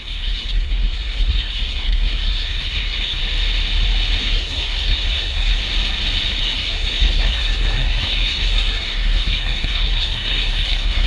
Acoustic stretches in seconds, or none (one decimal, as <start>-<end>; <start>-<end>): 3.2-4.2; 5.6-6.4